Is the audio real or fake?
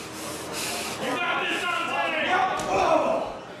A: real